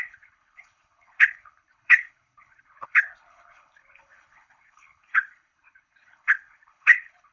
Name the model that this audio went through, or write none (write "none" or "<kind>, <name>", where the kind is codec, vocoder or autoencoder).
codec, HILCodec